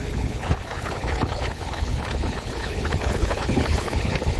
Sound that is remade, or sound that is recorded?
remade